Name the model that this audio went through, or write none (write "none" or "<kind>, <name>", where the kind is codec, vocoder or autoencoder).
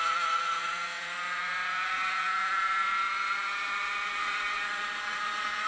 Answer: vocoder, Vocos